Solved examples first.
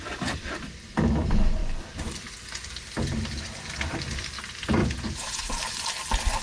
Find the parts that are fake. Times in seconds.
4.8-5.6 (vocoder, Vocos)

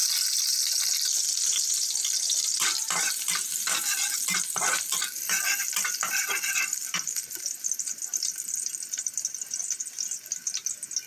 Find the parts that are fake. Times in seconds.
0.6-9.6 (vocoder, BigVGAN v2)